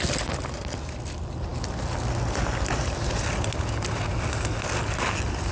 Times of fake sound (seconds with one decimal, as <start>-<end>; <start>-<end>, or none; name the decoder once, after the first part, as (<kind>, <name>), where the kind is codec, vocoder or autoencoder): none